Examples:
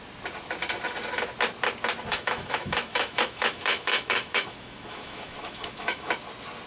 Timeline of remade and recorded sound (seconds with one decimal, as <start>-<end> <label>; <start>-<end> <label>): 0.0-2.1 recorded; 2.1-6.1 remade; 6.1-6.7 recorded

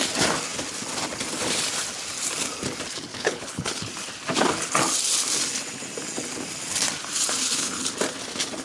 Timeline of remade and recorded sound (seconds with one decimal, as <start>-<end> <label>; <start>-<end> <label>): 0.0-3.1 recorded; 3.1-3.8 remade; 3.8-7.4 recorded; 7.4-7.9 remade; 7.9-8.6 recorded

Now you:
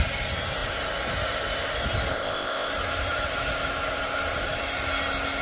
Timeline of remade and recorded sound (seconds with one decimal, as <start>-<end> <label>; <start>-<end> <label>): 0.0-2.1 recorded; 2.1-2.7 remade; 2.7-5.4 recorded

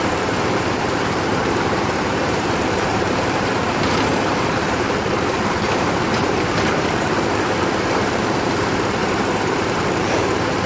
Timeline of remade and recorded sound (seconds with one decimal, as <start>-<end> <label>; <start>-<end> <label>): 0.0-10.7 remade

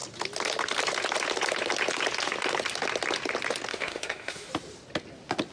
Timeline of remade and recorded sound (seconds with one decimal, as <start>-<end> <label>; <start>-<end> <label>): 0.0-3.7 recorded; 3.7-4.5 remade; 4.5-5.5 recorded